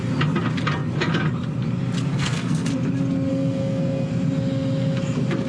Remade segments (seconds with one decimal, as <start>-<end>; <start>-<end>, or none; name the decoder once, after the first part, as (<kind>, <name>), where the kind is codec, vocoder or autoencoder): 2.1-2.7 (codec, SNAC); 3.3-4.1